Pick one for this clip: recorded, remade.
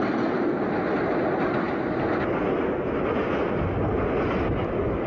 recorded